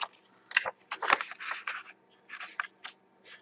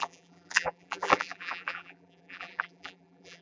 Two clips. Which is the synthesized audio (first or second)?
second